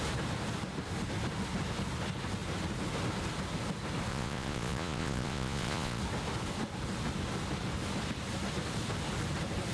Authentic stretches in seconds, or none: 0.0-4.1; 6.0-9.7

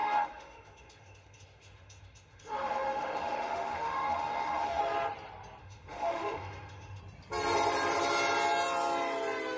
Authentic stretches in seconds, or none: 4.8-5.6; 7.0-9.6

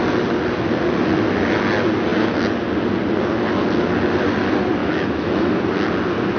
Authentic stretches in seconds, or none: 0.0-4.8; 5.5-6.4